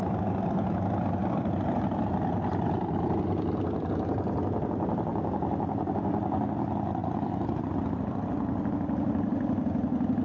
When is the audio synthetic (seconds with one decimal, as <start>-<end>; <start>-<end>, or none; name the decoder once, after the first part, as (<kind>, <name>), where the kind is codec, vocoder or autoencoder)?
1.2-3.2 (vocoder, BigVGAN v2); 7.0-8.7